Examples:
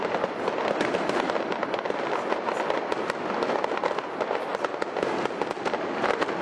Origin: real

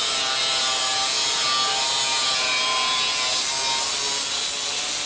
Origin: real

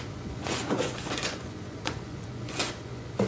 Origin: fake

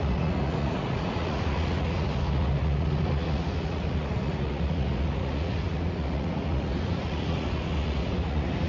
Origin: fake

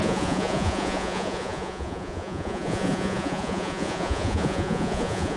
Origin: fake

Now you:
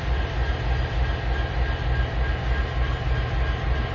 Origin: real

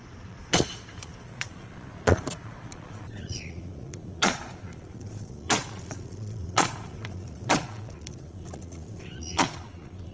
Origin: fake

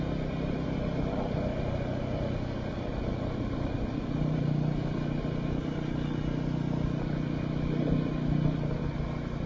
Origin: real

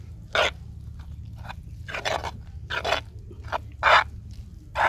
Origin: real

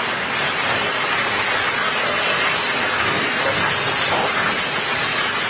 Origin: real